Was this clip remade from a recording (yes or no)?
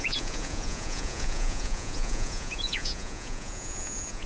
yes